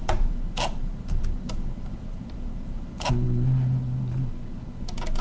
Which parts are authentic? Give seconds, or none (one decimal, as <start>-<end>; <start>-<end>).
3.1-5.2